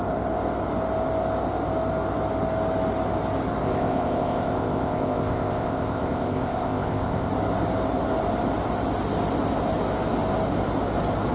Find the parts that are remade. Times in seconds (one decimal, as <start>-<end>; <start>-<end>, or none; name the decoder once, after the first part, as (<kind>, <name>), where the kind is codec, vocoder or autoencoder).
3.6-7.3 (codec, ZipCodec)